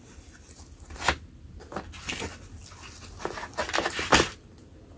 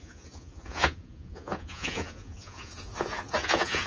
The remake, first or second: second